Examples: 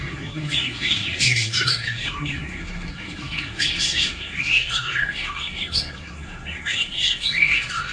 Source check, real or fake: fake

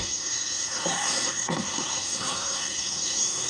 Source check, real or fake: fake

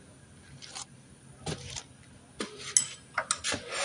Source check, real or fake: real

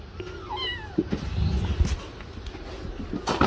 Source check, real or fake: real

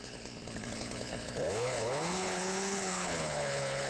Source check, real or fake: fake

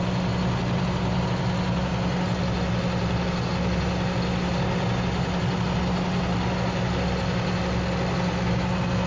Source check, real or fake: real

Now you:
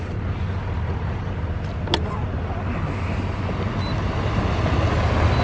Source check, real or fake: real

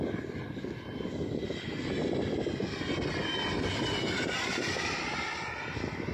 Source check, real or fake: real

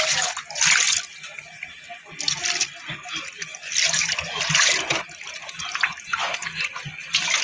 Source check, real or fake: real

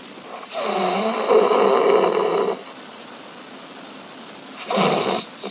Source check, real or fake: real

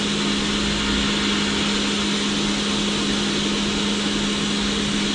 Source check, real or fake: real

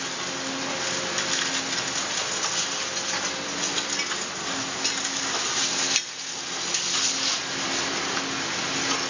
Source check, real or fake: real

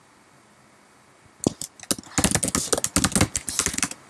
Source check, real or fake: real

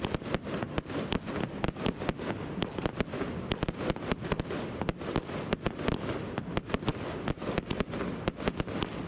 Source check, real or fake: real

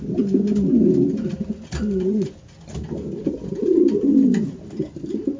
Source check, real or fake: real